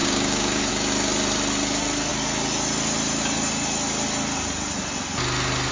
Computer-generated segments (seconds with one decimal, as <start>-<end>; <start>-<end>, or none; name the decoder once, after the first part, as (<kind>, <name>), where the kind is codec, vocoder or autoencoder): 0.0-0.7 (codec, DAC)